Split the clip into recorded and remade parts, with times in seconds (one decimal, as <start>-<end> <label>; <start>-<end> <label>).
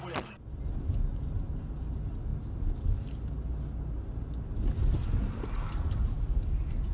0.0-6.9 recorded